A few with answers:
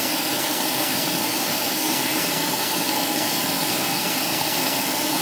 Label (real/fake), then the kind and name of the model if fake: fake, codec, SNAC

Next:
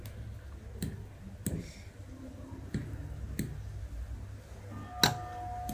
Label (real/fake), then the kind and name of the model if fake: real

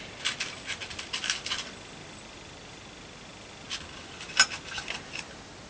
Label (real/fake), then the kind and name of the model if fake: real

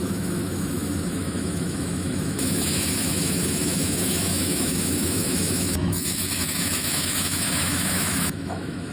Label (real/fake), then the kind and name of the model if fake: fake, autoencoder, DAC-VAE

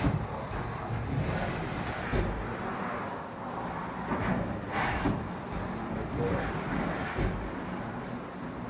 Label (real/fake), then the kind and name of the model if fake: real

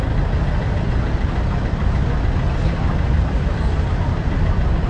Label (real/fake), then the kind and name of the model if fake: real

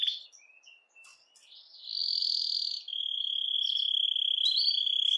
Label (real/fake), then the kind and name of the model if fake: real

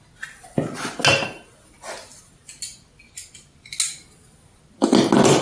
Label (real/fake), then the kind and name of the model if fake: real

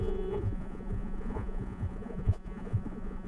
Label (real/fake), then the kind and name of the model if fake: fake, vocoder, Vocos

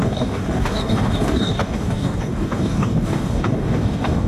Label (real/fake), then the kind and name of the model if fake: fake, codec, DAC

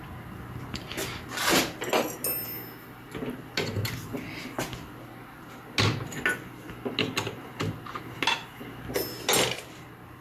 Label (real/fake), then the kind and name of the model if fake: real